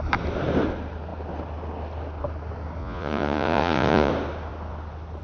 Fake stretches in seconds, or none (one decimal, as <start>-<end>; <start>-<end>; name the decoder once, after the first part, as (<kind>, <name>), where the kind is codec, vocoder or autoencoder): 2.8-4.1 (vocoder, Vocos)

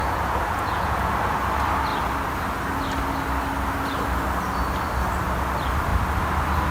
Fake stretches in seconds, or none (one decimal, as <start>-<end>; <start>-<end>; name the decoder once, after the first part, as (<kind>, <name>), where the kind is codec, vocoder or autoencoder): 0.0-1.1 (vocoder, Vocos)

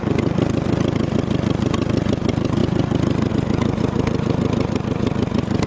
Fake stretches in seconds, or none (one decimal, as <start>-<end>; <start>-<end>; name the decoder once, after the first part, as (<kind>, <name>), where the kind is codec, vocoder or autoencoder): none

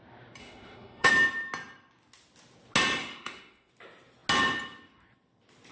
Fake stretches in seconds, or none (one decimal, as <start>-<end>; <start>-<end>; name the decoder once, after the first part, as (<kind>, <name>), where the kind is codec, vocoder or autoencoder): 0.4-1.1 (autoencoder, DAC-VAE); 3.0-3.7

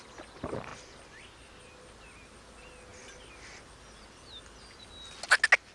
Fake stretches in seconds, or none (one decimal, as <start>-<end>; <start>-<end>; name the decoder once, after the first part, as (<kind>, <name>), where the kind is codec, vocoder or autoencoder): none

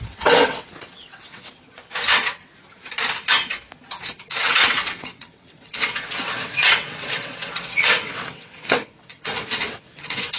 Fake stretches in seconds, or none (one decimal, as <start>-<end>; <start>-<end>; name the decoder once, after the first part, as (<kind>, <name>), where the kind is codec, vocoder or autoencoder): 0.0-2.5 (vocoder, WaveNeXt); 4.2-10.4